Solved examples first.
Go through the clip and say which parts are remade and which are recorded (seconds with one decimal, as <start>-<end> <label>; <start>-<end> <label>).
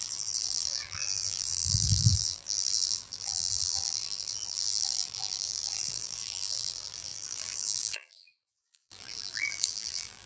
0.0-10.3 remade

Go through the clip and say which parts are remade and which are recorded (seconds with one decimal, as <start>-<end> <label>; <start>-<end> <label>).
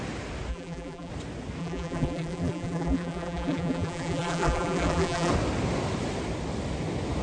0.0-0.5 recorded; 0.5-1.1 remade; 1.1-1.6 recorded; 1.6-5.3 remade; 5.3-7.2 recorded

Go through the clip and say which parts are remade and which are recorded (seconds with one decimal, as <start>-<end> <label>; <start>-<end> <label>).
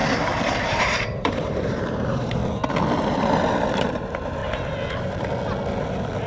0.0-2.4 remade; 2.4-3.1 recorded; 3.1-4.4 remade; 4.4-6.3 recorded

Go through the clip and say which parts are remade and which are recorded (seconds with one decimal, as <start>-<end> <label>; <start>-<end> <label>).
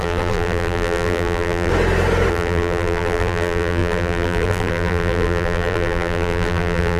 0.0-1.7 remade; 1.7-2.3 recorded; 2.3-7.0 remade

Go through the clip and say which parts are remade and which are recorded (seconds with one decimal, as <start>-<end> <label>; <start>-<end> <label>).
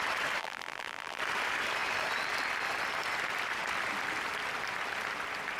0.0-0.4 recorded; 0.4-1.2 remade; 1.2-5.6 recorded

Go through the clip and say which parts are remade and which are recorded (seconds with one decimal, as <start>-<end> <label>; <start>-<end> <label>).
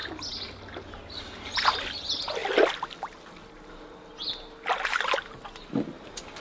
0.0-6.4 recorded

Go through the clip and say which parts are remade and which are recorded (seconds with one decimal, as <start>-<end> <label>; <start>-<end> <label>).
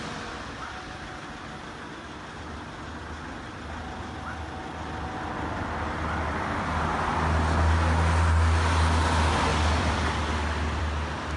0.0-11.4 recorded